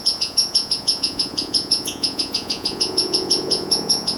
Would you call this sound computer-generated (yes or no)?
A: yes